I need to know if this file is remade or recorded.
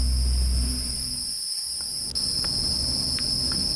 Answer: recorded